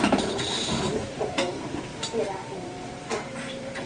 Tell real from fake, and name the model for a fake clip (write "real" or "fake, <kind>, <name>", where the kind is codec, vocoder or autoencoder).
fake, vocoder, BigVGAN v2